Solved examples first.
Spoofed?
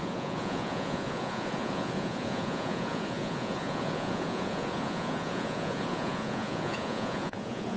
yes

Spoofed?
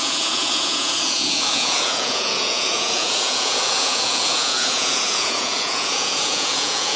yes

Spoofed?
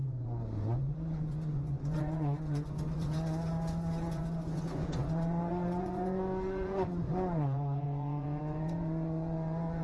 yes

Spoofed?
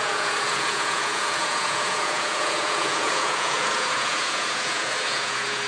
yes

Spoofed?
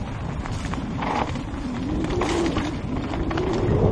no